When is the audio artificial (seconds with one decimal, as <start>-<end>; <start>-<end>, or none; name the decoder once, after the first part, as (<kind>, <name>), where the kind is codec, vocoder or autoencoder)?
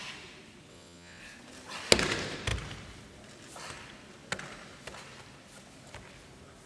0.7-1.2 (vocoder, WaveNeXt)